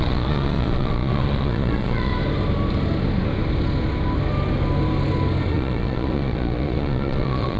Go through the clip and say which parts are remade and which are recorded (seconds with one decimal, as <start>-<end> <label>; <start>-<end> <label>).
0.0-2.1 remade; 2.1-5.5 recorded; 5.5-7.6 remade